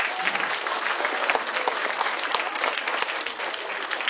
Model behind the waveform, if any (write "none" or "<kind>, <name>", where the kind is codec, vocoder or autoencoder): none